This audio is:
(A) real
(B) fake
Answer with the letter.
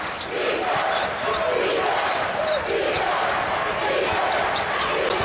A